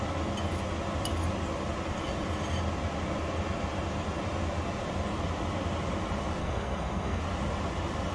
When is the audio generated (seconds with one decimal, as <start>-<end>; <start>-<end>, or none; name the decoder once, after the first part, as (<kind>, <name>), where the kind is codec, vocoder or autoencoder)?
6.4-7.2 (codec, SNAC)